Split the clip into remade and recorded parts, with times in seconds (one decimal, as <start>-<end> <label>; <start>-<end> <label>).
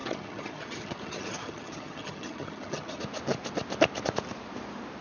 0.0-3.0 remade; 3.0-5.0 recorded